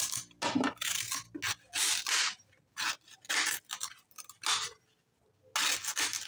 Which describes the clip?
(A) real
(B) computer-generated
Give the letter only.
A